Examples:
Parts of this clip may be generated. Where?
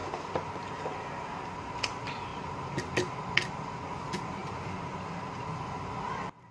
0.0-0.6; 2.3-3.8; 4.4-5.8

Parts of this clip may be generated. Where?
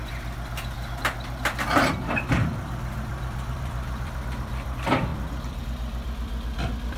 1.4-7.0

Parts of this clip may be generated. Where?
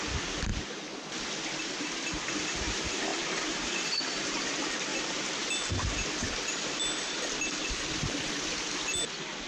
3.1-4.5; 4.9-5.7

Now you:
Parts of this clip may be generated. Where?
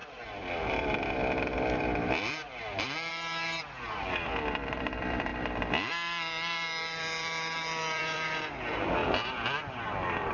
0.0-9.0